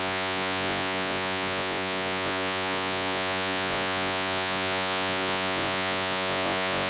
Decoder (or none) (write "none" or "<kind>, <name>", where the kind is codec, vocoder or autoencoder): vocoder, Vocos